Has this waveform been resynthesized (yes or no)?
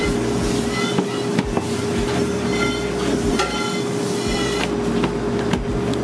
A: no